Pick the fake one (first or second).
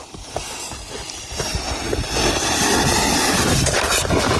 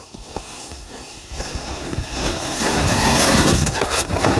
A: second